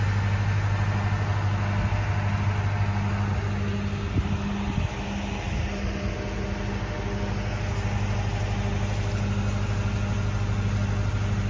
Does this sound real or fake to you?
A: real